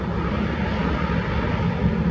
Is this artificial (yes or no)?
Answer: no